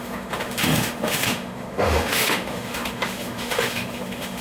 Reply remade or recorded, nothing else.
remade